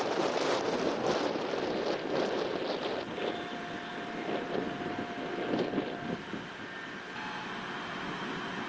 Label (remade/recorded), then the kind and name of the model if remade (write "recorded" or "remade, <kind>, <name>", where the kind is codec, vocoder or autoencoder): remade, vocoder, BigVGAN v2